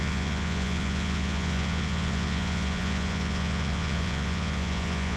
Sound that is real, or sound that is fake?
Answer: fake